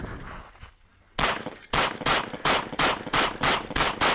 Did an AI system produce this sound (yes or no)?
no